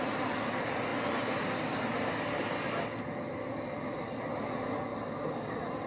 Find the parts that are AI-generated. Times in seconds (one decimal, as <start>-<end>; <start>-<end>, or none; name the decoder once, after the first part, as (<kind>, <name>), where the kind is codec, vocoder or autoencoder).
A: none